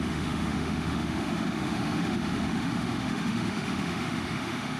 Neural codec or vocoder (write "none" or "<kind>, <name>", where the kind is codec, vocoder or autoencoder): autoencoder, DAC-VAE